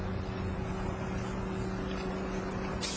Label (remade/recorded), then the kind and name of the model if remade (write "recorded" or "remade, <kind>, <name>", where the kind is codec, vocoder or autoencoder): recorded